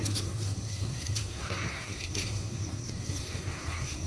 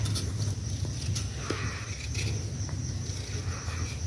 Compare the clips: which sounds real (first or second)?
second